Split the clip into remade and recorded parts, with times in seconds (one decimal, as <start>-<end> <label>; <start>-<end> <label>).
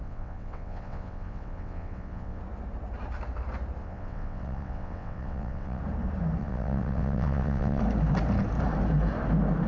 0.0-2.4 remade; 2.4-3.8 recorded; 3.8-5.8 remade; 5.8-6.4 recorded; 6.4-7.8 remade; 7.8-9.7 recorded